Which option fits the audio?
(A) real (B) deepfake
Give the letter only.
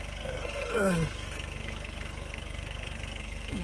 B